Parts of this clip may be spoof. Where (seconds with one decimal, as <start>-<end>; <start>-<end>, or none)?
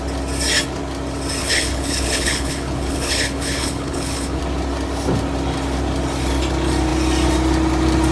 1.4-4.4